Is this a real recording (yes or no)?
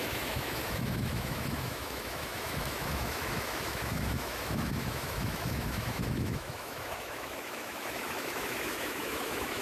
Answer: no